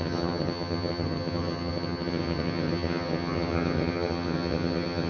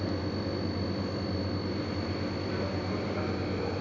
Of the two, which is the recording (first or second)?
second